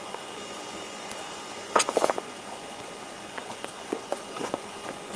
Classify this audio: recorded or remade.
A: remade